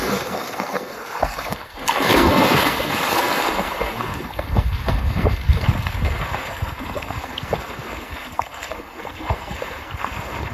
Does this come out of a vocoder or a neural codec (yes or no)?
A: yes